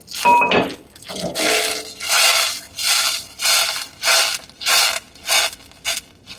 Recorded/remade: recorded